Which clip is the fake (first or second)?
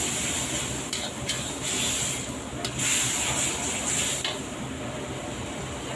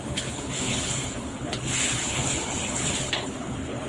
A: second